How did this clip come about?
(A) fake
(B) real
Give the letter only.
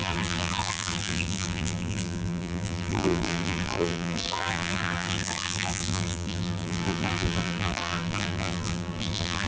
A